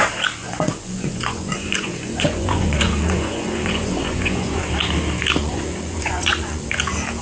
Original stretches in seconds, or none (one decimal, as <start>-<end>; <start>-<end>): 0.0-0.4; 4.7-5.4; 6.7-7.2

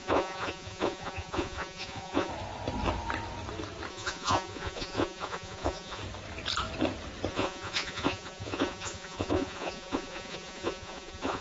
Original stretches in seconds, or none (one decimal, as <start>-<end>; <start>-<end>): 2.3-3.9; 6.0-7.3

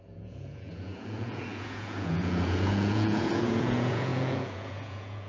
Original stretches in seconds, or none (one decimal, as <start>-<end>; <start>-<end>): none

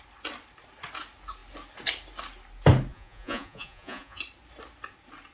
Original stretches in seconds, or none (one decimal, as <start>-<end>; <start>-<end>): 0.0-2.9; 4.2-5.3

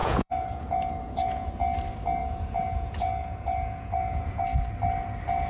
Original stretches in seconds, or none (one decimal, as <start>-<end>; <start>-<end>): 1.5-2.2; 4.4-5.5

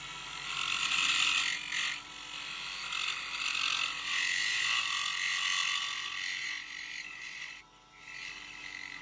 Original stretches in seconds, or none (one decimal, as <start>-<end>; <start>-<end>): 0.0-4.4; 4.9-6.4; 7.6-9.0

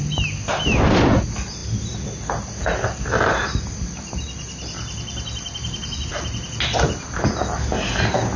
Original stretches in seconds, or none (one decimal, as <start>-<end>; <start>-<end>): 0.0-8.4